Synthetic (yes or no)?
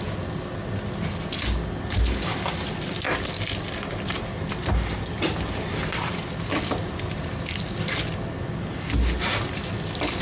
no